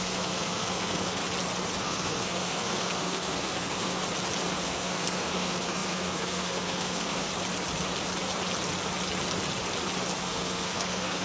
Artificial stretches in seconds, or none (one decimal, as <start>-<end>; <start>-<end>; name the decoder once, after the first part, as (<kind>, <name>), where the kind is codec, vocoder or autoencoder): 0.0-1.2 (codec, SNAC); 1.8-4.0; 4.6-7.3; 10.2-11.2